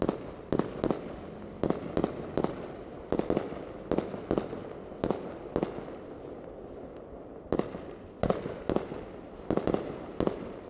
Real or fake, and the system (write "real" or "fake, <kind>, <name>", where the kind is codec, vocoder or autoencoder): real